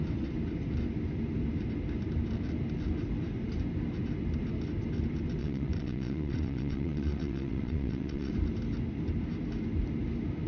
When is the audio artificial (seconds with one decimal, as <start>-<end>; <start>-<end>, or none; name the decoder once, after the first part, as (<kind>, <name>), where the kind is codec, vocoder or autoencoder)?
5.4-8.3 (vocoder, WaveNeXt)

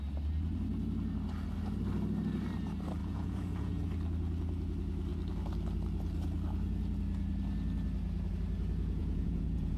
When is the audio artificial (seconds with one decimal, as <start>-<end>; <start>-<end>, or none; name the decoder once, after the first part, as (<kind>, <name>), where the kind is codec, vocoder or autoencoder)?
3.0-3.8 (vocoder, Vocos); 9.0-9.8

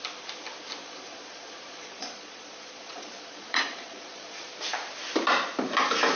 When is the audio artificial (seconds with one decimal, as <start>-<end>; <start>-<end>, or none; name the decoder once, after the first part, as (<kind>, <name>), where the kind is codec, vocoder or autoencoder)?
0.8-4.5 (vocoder, Vocos)

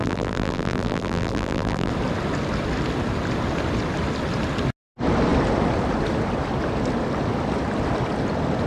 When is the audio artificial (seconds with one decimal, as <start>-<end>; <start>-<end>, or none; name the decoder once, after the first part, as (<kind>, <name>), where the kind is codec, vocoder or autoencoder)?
0.0-1.9 (vocoder, BigVGAN v2)

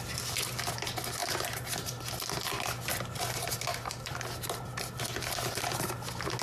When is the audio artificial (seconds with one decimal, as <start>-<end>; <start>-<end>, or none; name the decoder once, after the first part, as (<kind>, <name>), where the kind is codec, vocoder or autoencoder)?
none

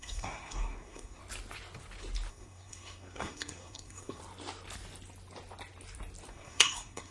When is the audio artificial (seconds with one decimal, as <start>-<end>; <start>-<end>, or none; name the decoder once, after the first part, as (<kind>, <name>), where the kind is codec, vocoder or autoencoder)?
0.0-1.2 (codec, SNAC); 2.3-4.2; 6.3-7.1

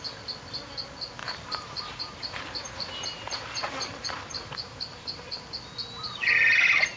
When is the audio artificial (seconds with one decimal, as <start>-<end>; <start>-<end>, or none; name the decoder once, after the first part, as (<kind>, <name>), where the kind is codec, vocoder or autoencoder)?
1.2-5.4 (vocoder, BigVGAN v2)